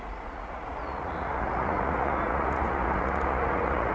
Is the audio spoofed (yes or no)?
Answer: yes